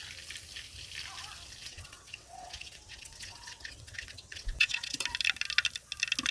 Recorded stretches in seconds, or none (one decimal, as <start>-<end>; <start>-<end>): 0.0-1.6; 5.0-6.3